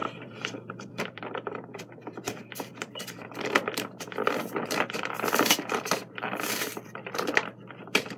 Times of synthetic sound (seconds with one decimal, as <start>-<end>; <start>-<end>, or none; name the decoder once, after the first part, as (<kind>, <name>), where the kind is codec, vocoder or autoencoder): 0.0-8.2 (vocoder, BigVGAN v2)